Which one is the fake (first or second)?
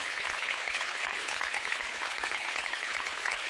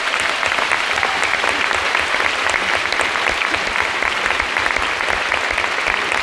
first